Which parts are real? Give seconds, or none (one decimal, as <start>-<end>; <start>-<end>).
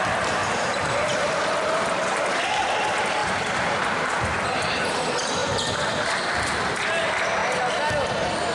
0.0-0.4; 1.3-3.2; 5.0-5.4; 6.6-8.5